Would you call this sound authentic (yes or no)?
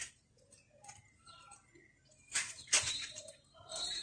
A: yes